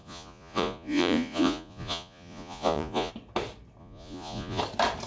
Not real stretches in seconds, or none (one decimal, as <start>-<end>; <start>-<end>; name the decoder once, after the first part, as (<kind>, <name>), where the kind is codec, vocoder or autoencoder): 0.0-3.1 (vocoder, Vocos); 3.8-4.6